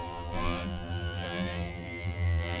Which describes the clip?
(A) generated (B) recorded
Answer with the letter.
A